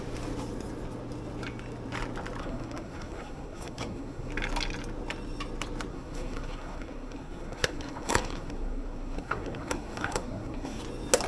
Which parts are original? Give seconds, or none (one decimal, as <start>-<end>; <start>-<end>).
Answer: 0.0-2.4; 4.3-5.9; 10.8-11.3

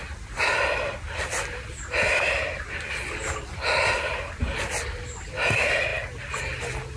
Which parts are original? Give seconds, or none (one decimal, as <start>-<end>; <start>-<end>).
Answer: 0.0-7.0